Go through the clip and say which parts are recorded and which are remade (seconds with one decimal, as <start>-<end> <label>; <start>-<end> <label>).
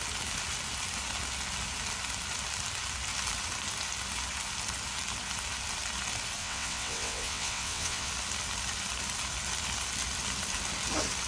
0.0-6.4 recorded; 6.4-8.1 remade; 8.1-11.3 recorded